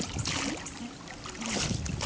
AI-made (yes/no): no